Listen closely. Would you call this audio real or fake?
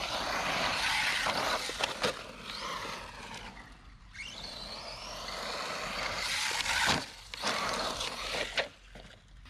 real